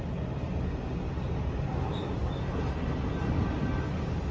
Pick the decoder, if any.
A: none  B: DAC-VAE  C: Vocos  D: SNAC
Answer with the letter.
A